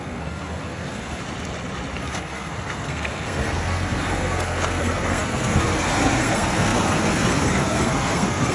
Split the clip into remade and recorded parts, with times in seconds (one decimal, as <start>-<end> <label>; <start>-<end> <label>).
0.0-1.2 remade; 1.2-2.0 recorded; 2.0-8.5 remade